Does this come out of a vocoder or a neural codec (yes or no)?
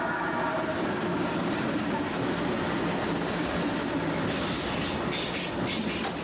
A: no